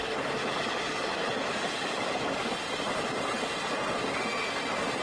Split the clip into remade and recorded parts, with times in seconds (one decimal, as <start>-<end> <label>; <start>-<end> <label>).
0.0-0.4 recorded; 0.4-2.5 remade; 2.5-5.0 recorded